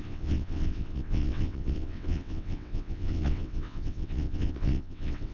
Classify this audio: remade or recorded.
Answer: remade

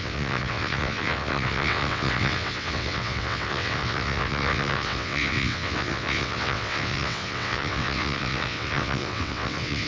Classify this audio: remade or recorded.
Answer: remade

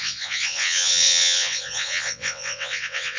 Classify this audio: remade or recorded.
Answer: remade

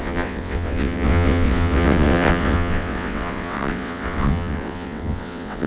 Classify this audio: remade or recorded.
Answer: remade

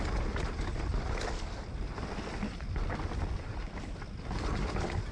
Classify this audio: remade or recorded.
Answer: recorded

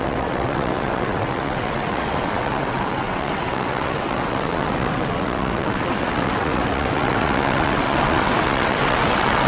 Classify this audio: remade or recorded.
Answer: remade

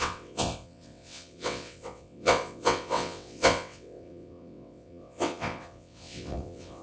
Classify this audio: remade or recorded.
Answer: remade